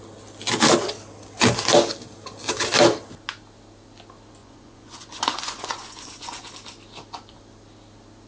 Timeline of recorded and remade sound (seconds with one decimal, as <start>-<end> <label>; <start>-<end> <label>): 0.0-4.4 recorded; 4.4-6.5 remade; 6.5-8.3 recorded